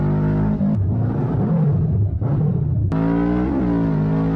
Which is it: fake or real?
real